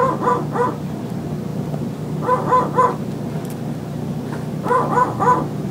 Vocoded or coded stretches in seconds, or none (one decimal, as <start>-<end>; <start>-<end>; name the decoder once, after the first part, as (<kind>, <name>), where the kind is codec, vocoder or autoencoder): none